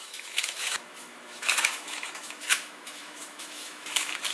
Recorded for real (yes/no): no